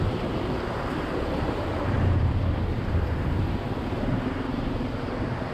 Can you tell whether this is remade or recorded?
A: remade